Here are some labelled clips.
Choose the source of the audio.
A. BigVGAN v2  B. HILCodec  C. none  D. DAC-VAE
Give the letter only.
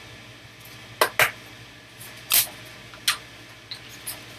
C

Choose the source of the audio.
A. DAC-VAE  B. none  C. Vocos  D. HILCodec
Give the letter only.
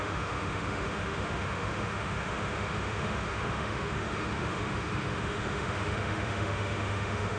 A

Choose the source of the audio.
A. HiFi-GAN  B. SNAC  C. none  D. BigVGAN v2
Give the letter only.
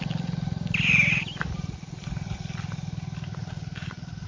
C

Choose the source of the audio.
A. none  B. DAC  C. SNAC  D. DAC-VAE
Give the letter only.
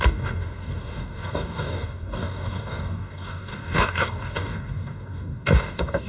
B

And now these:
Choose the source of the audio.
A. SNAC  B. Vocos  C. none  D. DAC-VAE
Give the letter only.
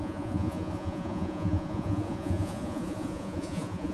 B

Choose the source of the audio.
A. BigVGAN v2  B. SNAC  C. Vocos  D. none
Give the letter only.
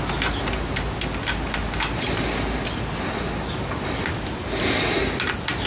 D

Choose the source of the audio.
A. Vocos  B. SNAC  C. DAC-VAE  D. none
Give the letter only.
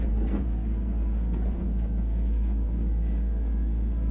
B